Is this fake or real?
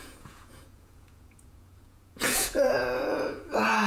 fake